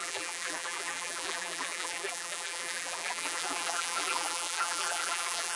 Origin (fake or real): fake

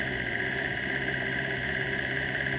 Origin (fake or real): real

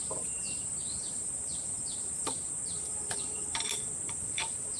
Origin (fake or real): fake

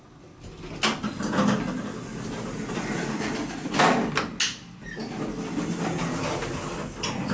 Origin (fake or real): real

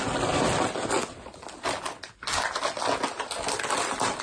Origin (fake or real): fake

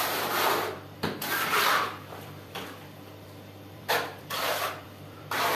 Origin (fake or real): fake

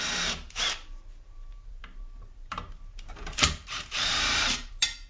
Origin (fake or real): fake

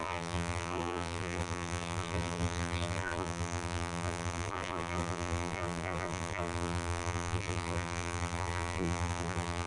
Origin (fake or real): fake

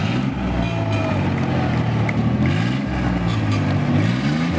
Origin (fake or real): real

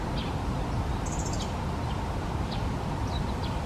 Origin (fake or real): real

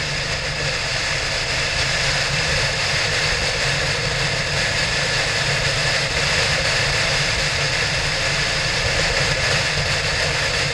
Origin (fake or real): fake